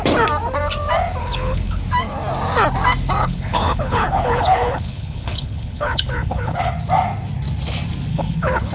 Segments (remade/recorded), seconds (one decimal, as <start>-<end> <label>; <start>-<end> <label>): 0.0-1.2 recorded; 1.2-1.8 remade; 1.8-3.2 recorded; 3.2-6.7 remade; 6.7-8.1 recorded; 8.1-8.7 remade